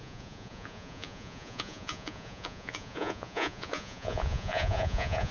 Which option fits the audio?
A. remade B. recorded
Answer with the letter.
A